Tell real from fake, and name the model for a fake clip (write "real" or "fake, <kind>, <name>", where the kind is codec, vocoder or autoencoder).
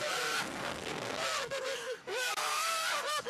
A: fake, codec, SNAC